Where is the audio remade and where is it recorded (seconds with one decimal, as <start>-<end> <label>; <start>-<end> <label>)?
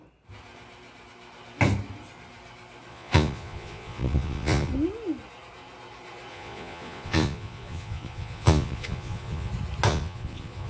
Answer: 0.0-2.9 recorded; 2.9-4.7 remade; 4.7-6.3 recorded; 6.3-9.5 remade; 9.5-9.9 recorded; 9.9-10.7 remade